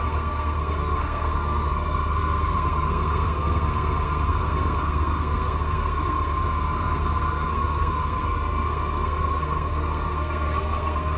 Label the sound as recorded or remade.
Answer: remade